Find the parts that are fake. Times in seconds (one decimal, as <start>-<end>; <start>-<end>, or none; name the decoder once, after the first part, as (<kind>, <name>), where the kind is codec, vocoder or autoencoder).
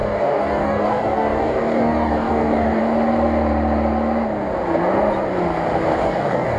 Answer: 0.0-2.8 (codec, DAC); 6.0-6.6